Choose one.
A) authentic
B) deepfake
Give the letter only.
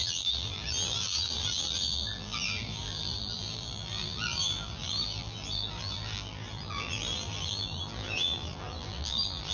B